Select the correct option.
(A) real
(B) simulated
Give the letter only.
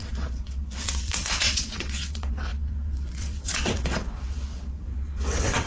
B